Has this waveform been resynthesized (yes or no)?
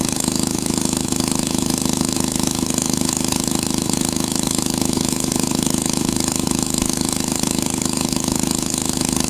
yes